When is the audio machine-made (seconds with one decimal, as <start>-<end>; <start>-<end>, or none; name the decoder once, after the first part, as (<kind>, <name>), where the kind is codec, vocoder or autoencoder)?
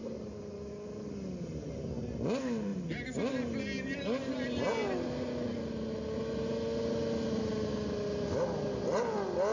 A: none